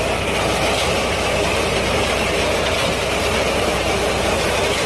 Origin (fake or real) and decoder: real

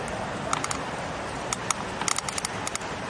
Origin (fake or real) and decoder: real